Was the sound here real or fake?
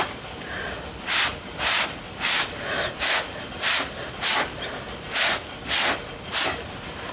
real